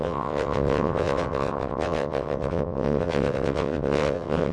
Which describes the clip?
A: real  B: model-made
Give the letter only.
B